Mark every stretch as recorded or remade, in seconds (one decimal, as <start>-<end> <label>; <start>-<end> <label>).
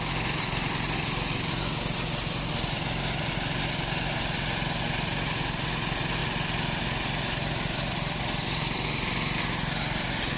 0.0-10.4 recorded